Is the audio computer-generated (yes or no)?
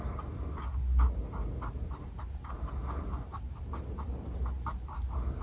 no